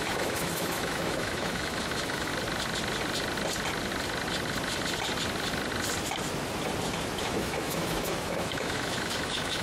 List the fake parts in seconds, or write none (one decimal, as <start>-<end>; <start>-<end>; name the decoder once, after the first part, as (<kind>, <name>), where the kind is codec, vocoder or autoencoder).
0.0-2.3 (autoencoder, DAC-VAE); 7.2-9.6